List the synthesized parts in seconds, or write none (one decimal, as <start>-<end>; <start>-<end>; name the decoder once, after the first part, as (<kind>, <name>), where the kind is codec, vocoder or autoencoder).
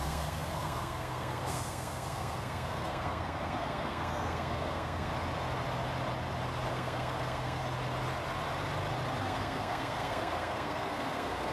0.0-5.1 (codec, SNAC); 6.7-7.6; 9.2-11.5